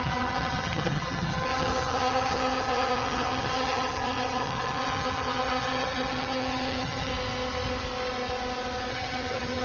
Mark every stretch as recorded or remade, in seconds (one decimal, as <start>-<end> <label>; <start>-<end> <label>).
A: 0.0-7.1 remade; 7.1-8.9 recorded; 8.9-9.6 remade